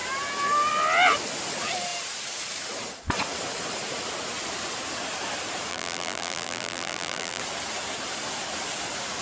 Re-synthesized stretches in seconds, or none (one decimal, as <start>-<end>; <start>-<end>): 5.7-7.4